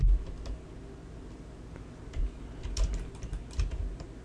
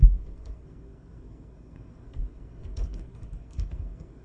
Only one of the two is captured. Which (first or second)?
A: first